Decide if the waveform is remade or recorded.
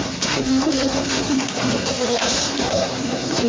remade